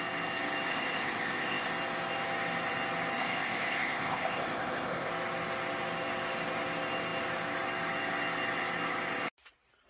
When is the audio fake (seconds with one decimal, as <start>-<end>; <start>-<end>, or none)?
0.7-1.7; 3.2-5.1